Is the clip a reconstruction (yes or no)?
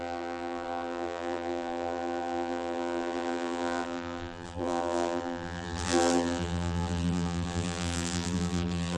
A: yes